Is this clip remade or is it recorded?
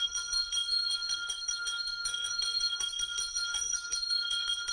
remade